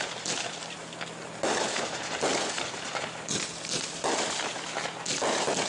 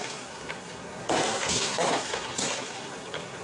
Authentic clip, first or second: first